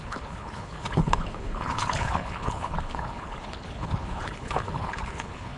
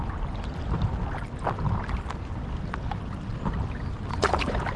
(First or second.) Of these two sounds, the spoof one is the first